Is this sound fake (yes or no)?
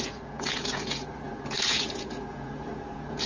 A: yes